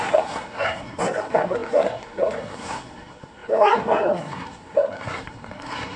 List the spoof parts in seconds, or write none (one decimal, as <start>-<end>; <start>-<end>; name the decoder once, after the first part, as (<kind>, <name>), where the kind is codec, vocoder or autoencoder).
0.0-6.0 (codec, SNAC)